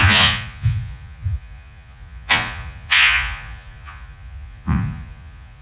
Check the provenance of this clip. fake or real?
fake